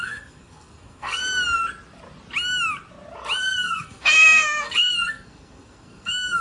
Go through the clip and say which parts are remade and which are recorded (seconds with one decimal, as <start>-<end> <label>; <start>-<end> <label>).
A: 0.0-1.2 remade; 1.2-3.4 recorded; 3.4-6.4 remade